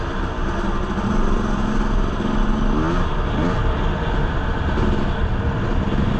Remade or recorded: recorded